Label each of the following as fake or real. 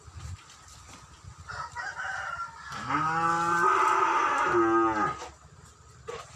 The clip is real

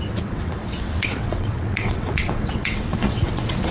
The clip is fake